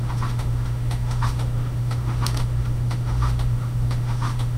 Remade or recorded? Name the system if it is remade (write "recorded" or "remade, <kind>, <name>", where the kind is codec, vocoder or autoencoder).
remade, autoencoder, DAC-VAE